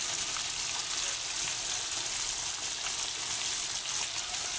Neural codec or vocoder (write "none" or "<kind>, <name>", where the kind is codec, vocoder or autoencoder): none